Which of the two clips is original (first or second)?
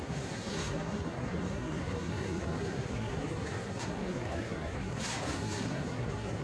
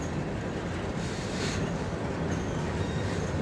second